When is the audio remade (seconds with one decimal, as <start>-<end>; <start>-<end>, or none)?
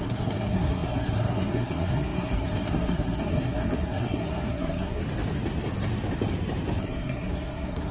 0.0-5.0; 6.8-7.9